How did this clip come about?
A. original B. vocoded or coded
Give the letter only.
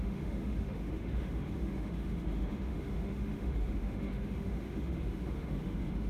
B